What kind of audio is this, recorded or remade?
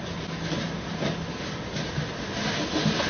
recorded